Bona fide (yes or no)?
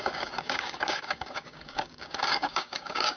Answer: no